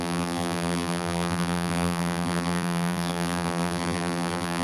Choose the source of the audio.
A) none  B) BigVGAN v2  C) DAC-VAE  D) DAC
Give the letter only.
B